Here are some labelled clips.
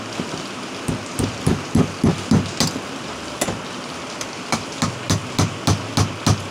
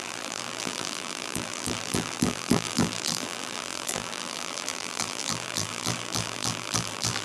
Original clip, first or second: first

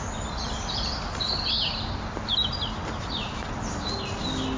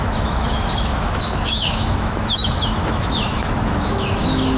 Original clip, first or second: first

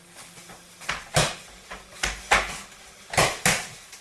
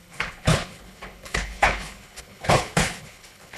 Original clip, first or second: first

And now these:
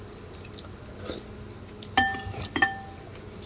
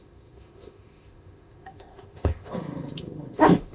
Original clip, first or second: first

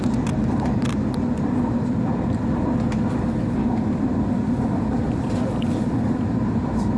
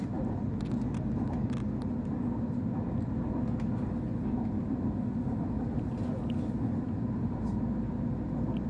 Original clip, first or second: second